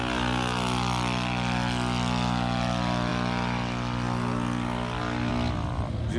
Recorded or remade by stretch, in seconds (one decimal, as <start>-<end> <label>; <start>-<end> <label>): 0.0-6.2 recorded